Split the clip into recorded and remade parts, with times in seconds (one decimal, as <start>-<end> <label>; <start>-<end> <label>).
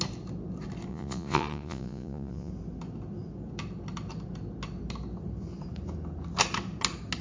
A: 0.0-0.9 recorded; 0.9-2.5 remade; 2.5-7.2 recorded